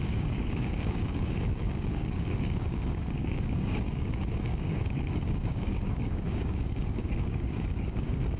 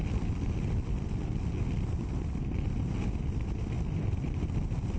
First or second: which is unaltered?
second